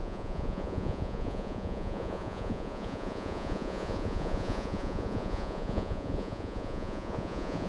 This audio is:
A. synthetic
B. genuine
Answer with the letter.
A